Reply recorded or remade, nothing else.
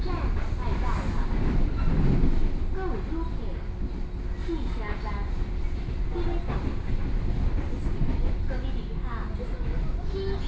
recorded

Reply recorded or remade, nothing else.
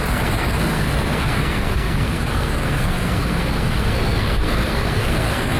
remade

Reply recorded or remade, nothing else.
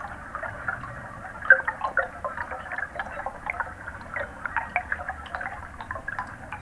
recorded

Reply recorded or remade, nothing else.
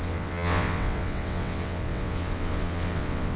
remade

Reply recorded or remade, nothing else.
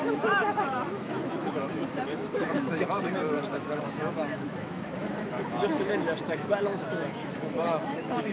remade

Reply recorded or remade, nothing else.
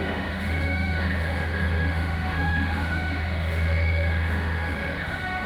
remade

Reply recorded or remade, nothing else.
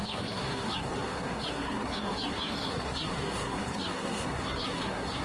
remade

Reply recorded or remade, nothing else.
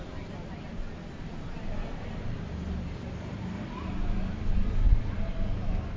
recorded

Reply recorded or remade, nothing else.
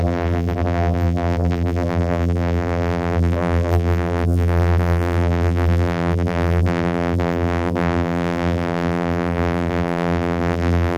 remade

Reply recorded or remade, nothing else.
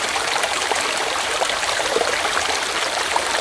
remade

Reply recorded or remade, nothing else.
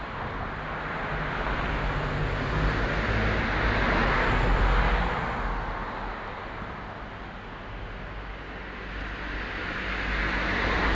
recorded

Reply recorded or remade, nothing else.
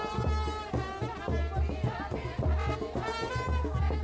recorded